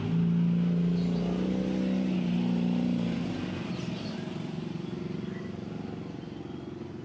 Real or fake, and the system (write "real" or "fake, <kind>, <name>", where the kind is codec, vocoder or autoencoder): real